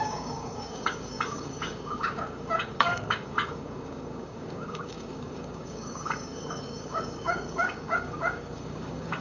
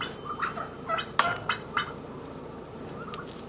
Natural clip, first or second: second